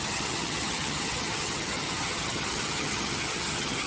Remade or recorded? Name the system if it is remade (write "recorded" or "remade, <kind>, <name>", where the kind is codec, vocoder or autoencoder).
remade, vocoder, HiFi-GAN